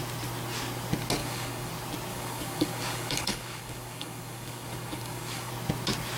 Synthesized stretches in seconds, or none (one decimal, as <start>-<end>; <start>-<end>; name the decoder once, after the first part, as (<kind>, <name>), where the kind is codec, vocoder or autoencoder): 1.2-1.7 (codec, DAC); 2.1-5.5